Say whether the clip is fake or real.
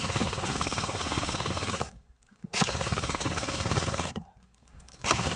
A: fake